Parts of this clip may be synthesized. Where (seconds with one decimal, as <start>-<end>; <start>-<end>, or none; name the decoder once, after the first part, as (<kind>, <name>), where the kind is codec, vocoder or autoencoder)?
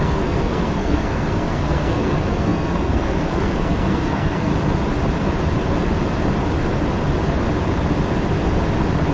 0.0-4.5 (codec, SNAC)